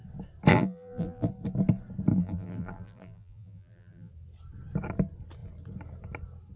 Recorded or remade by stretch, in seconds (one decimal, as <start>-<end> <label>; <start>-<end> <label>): 0.0-0.5 recorded; 0.5-1.3 remade; 1.3-2.1 recorded; 2.1-4.1 remade; 4.1-6.6 recorded